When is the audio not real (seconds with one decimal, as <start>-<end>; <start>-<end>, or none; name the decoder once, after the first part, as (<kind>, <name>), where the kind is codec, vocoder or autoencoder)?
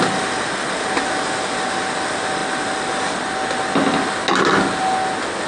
none